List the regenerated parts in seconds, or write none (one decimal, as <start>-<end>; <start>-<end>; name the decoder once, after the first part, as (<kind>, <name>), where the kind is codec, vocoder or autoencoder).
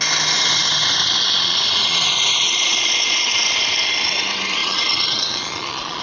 1.0-3.3 (vocoder, Vocos); 4.6-6.0